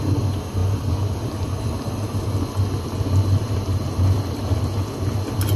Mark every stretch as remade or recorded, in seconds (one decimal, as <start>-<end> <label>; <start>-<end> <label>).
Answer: 0.0-3.4 recorded; 3.4-4.4 remade; 4.4-5.6 recorded